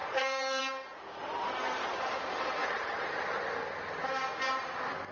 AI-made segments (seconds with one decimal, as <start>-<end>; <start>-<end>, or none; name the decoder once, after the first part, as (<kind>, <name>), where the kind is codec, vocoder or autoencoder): 0.0-0.6 (vocoder, BigVGAN v2); 1.2-1.9; 2.6-3.1